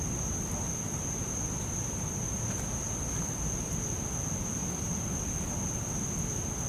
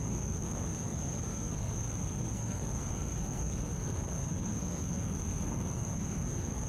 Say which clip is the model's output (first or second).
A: second